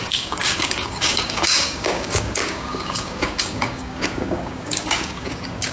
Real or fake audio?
fake